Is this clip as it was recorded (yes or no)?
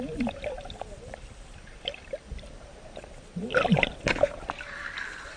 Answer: yes